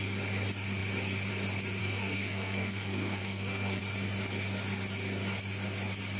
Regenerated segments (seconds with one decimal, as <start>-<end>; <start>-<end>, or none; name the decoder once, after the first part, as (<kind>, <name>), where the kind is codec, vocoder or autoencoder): 1.8-3.8 (codec, SNAC)